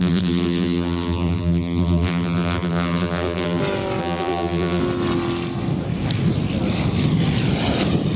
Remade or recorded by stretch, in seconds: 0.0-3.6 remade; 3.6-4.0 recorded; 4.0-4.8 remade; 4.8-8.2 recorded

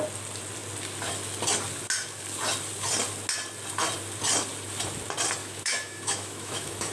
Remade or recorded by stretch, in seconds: 0.0-5.4 recorded; 5.4-6.9 remade

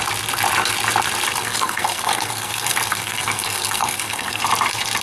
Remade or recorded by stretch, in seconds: 0.0-1.4 recorded; 1.4-4.4 remade; 4.4-5.0 recorded

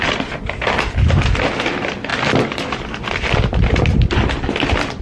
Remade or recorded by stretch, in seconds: 0.0-5.0 recorded

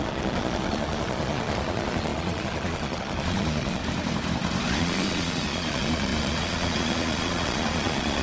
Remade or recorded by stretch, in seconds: 0.0-3.8 remade; 3.8-4.8 recorded; 4.8-8.2 remade